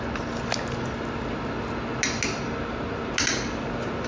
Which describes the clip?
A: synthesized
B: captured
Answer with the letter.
B